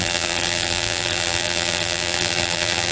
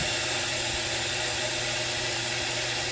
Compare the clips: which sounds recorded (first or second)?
second